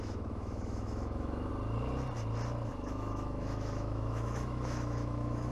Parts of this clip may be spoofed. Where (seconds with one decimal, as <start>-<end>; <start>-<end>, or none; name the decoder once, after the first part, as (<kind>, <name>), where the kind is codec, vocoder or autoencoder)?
0.0-1.5 (autoencoder, DAC-VAE); 2.7-5.5